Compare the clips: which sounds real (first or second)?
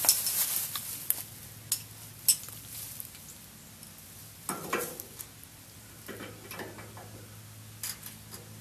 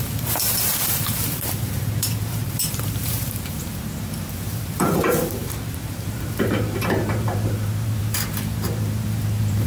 first